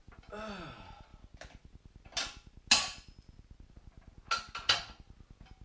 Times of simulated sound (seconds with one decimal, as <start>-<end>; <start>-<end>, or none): none